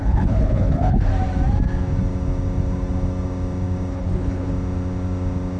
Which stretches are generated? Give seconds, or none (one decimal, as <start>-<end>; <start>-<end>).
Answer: 0.0-1.1; 3.9-4.5